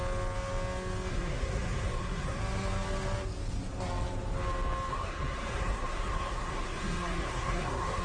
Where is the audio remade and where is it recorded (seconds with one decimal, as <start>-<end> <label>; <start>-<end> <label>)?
0.0-1.1 recorded; 1.1-2.4 remade; 2.4-4.9 recorded; 4.9-8.0 remade